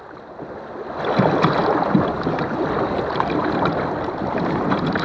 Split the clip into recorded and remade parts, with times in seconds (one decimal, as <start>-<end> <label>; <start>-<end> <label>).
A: 0.0-5.0 recorded